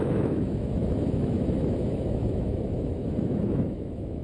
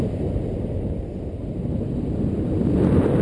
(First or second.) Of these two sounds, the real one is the second